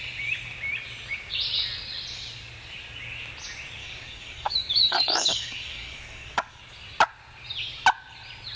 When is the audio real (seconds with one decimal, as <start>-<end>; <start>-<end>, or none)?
0.0-3.8; 6.6-8.6